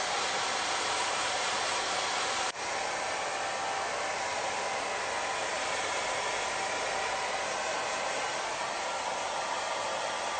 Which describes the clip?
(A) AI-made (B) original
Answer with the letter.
B